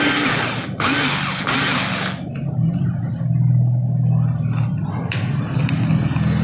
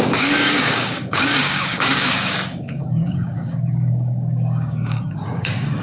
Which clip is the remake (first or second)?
second